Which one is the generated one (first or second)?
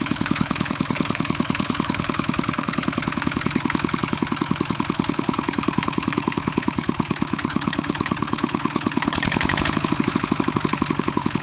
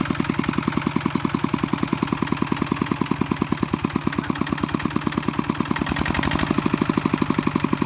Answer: first